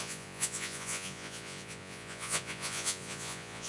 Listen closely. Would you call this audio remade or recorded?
remade